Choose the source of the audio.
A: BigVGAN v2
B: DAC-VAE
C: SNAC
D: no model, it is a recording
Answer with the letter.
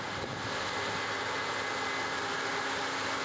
D